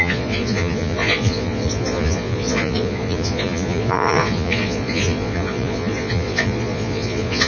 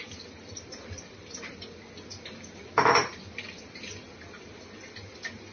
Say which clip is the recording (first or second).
second